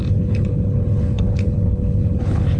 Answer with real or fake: fake